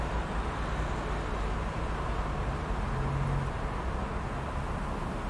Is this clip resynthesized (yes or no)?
no